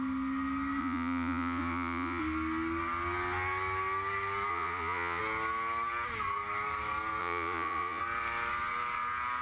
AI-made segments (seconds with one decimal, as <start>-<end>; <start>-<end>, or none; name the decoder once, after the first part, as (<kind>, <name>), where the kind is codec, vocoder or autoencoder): 0.8-2.2 (vocoder, Vocos); 4.5-5.2; 7.2-8.0